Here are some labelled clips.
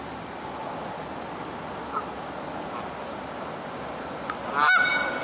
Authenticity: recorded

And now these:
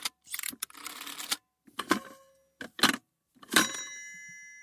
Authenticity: recorded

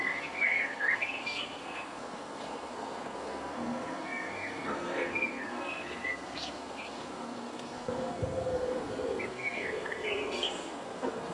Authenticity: remade